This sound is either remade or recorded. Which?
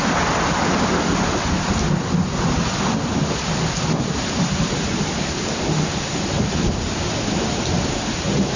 remade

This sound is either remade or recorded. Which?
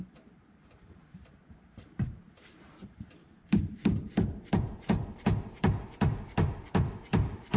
remade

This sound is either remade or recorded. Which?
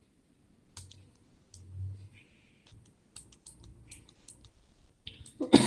recorded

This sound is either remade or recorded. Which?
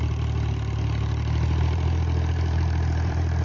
remade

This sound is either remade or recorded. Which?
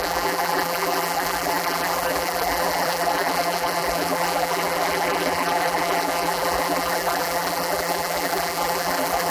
remade